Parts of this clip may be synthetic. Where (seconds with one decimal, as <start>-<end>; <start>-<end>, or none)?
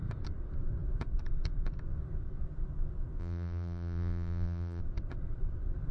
3.2-4.8